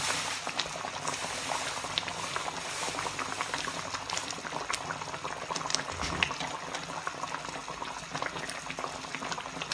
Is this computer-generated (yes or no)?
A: no